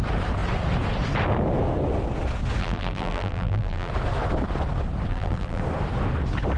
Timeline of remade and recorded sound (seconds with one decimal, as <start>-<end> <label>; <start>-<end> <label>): 0.0-2.6 recorded; 2.6-3.9 remade; 3.9-5.1 recorded; 5.1-5.6 remade; 5.6-6.6 recorded